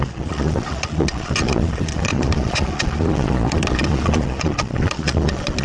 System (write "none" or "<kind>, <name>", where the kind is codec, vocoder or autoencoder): vocoder, Vocos